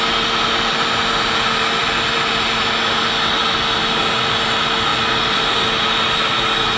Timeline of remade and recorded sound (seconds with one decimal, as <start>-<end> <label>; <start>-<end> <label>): 0.0-1.8 recorded; 1.8-2.6 remade; 2.6-4.9 recorded; 4.9-5.7 remade; 5.7-6.8 recorded